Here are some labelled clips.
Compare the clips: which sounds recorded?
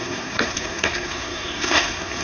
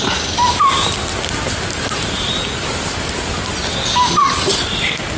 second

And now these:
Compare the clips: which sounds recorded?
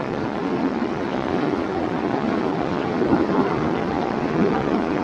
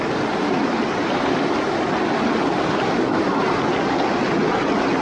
second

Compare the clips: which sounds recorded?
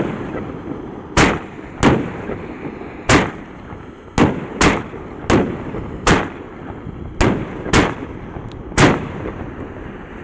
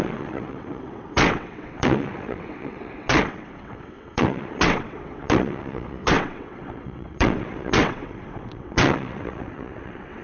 first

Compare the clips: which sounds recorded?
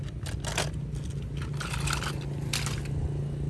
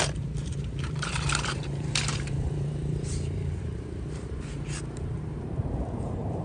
first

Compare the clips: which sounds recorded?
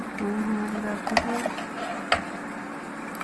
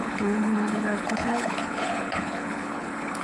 first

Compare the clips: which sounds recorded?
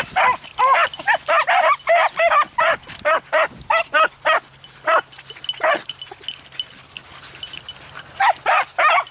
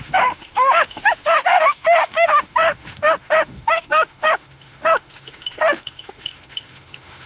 first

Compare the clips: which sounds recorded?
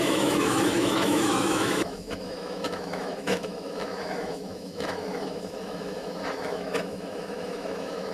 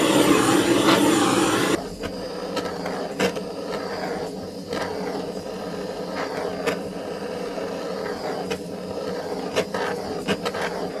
second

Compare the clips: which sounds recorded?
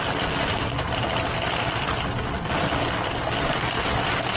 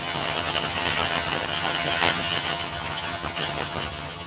first